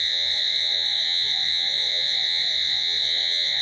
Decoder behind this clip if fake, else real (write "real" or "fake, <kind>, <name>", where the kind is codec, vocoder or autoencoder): fake, vocoder, Vocos